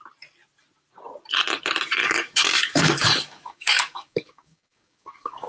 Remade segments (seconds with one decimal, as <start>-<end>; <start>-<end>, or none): 2.0-5.5

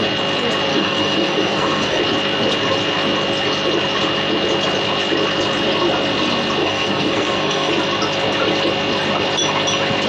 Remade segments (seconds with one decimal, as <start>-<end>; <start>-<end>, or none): 0.7-2.0; 6.6-7.7